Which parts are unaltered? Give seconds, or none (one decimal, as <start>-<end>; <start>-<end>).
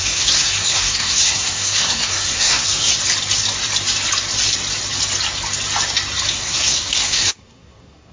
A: 2.9-6.3